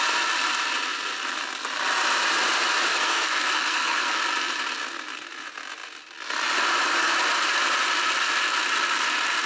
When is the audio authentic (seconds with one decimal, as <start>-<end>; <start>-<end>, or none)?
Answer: 0.0-2.9; 4.2-9.5